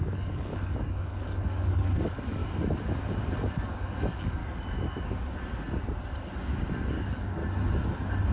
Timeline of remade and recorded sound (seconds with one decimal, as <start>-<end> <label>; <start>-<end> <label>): 0.0-2.4 remade; 2.4-3.5 recorded; 3.5-4.4 remade; 4.4-6.9 recorded; 6.9-7.4 remade; 7.4-8.3 recorded